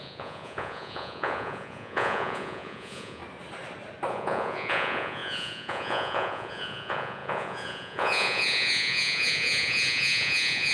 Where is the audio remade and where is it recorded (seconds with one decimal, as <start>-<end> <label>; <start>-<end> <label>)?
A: 0.0-3.2 remade; 3.2-4.1 recorded; 4.1-10.7 remade